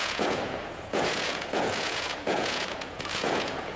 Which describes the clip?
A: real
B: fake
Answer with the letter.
B